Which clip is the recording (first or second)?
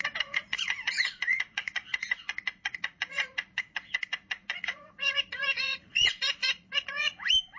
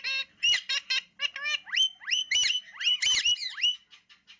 second